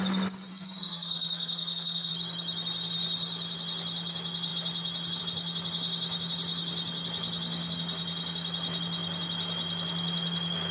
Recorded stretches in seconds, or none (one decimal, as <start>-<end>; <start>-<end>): 0.0-0.5; 2.1-10.7